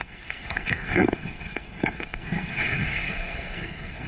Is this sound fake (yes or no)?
yes